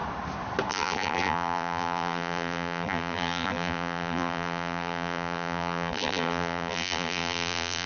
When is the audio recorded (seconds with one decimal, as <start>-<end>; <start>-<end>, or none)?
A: 0.0-0.7